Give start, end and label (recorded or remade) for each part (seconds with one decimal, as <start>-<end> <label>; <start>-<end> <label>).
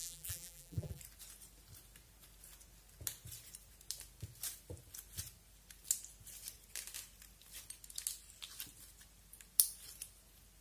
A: 0.0-1.0 remade; 1.0-10.6 recorded